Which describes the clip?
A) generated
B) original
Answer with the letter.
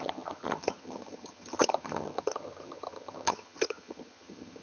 A